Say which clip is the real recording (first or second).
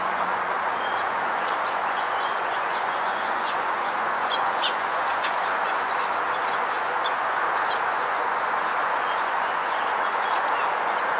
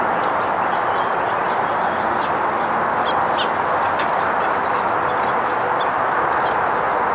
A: second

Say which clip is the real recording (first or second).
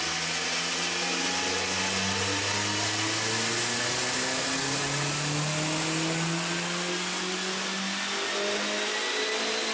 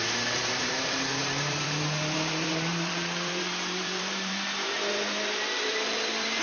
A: first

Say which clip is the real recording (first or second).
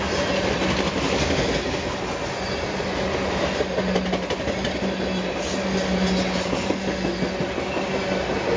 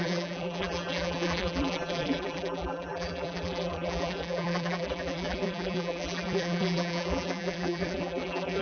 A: first